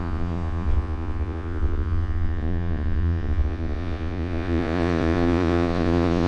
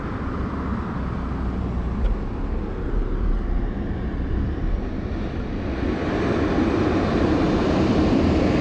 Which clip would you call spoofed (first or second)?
first